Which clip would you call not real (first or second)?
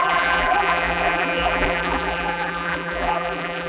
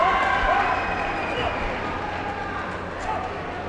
first